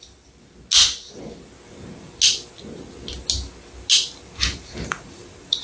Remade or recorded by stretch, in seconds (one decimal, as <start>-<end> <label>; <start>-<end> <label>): 0.0-4.5 recorded; 4.5-5.6 remade